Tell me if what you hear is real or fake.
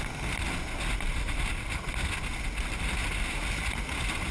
real